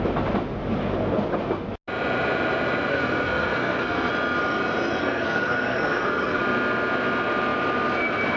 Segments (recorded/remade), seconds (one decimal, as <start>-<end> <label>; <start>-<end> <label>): 0.0-2.9 recorded; 2.9-4.1 remade; 4.1-5.0 recorded; 5.0-6.4 remade; 6.4-8.4 recorded